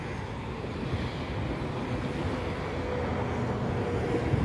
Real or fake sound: real